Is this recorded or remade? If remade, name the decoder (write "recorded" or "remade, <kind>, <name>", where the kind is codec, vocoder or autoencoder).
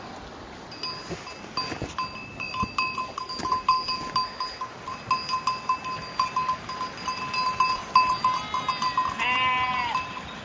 recorded